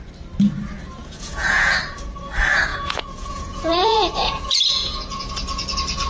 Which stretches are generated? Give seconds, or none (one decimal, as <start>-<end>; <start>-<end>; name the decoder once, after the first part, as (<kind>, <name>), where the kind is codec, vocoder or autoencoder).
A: 1.0-1.7 (vocoder, Vocos); 2.7-5.3